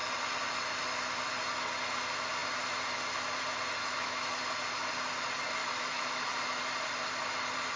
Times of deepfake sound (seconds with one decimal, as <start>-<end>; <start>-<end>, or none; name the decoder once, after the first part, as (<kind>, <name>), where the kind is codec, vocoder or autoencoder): 3.8-4.4 (autoencoder, DAC-VAE); 5.6-6.3